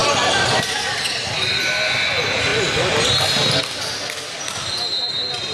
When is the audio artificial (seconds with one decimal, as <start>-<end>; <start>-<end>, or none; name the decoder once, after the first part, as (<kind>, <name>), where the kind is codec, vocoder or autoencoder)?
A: none